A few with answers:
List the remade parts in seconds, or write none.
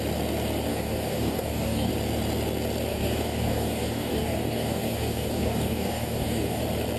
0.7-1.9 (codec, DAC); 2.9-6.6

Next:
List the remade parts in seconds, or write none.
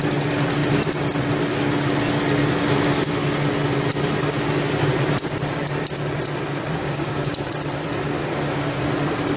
6.8-7.5 (codec, DAC); 8.2-8.8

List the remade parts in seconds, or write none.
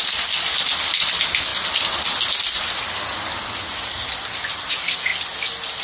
none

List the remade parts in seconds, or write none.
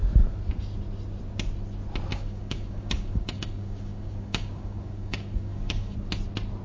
2.1-6.1 (codec, DAC)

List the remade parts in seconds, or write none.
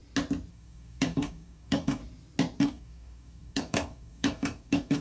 0.5-2.0 (codec, DAC); 2.6-5.0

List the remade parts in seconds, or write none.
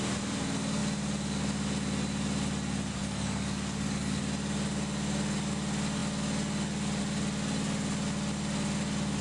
3.0-4.2 (codec, DAC)